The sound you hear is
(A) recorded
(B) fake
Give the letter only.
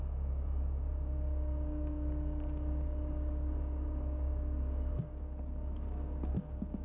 B